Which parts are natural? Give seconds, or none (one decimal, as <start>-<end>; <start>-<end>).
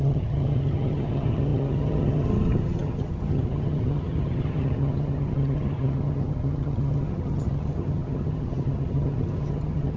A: none